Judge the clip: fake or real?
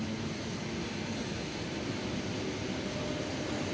real